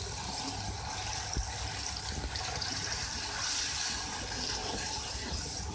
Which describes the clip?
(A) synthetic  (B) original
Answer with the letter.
B